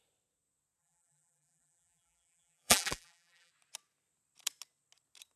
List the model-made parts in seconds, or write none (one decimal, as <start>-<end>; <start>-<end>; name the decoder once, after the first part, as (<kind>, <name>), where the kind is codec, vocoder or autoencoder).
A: 0.8-3.5 (vocoder, BigVGAN v2)